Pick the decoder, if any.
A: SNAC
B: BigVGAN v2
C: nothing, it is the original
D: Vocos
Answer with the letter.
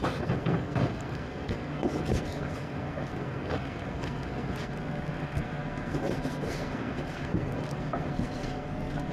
A